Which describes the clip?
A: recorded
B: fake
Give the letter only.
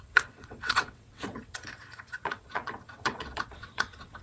B